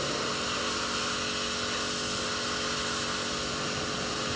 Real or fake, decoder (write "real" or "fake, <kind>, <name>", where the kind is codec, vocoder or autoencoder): real